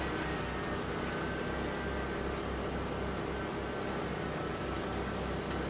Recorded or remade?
recorded